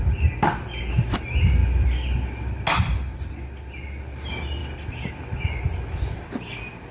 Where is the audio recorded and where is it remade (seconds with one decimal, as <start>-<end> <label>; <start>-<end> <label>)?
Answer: 0.0-6.9 recorded